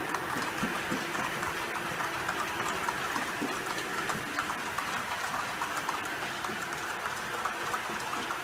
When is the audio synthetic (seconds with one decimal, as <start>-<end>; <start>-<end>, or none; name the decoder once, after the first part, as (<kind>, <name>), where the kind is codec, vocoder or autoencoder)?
2.8-3.3 (vocoder, BigVGAN v2)